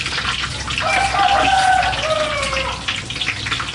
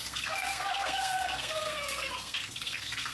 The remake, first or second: second